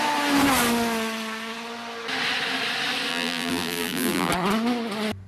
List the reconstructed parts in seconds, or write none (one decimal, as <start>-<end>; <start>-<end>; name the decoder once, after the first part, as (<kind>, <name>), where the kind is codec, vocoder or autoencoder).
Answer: 3.1-4.3 (vocoder, BigVGAN v2)